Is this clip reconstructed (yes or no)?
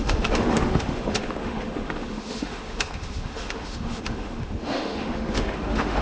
yes